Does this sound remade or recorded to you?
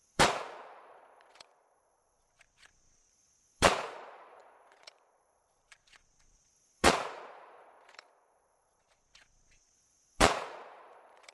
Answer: remade